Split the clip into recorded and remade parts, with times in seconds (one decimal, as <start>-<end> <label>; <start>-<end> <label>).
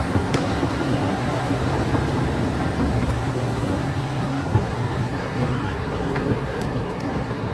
0.0-1.6 remade; 1.6-2.8 recorded; 2.8-7.5 remade